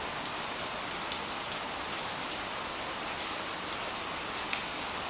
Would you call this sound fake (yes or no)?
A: no